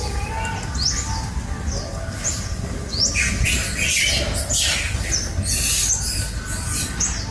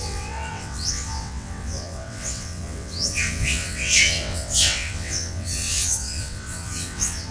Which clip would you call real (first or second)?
first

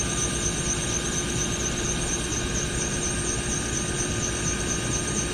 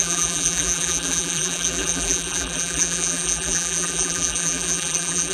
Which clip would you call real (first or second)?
first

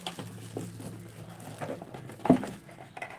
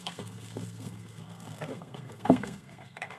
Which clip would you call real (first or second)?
first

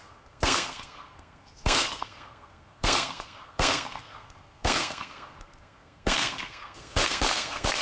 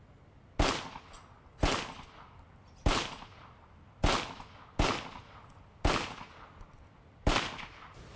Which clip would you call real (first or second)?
second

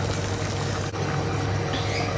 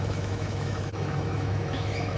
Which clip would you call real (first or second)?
first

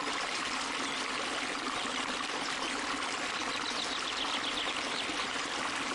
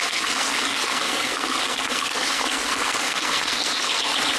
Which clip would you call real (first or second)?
first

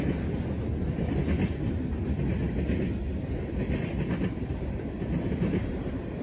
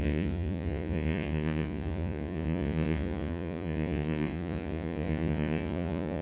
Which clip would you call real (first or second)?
first